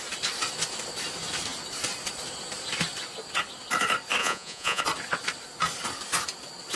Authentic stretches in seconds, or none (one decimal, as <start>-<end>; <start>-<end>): 0.0-4.2; 4.8-6.8